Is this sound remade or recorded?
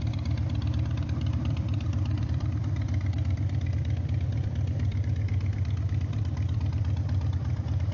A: remade